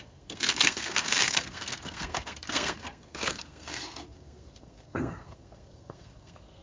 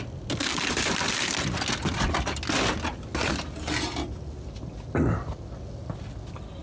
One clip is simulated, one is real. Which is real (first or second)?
second